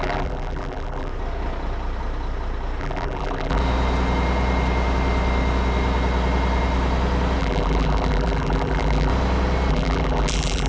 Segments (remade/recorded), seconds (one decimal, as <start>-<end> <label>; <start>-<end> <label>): 0.0-1.1 remade; 1.1-2.8 recorded; 2.8-3.6 remade; 3.6-7.4 recorded; 7.4-9.1 remade; 9.1-9.7 recorded; 9.7-10.7 remade